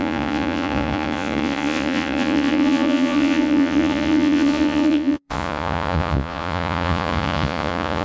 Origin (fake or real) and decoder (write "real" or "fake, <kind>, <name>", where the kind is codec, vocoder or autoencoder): fake, vocoder, Vocos